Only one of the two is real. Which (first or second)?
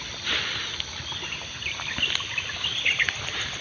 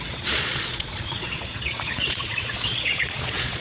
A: first